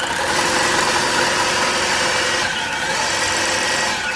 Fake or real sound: real